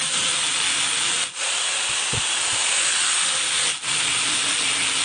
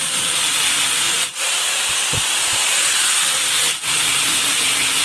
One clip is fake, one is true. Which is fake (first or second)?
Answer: second